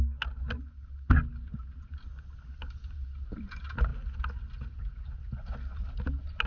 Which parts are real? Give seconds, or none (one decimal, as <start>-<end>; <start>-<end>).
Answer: 0.0-6.5